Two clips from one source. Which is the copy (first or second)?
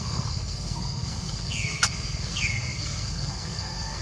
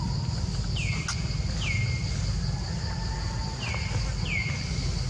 first